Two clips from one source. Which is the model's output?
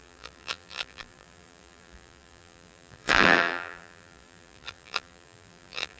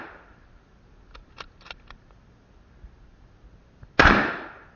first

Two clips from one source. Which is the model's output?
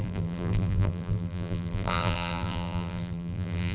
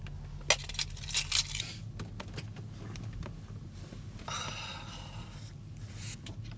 first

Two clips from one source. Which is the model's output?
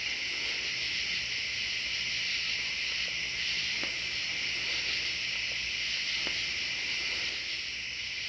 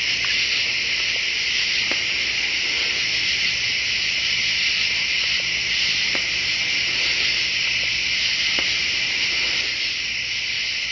second